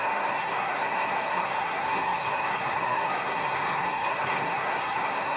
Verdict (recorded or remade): remade